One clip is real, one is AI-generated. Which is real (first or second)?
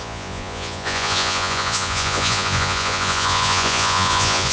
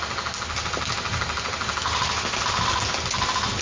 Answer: second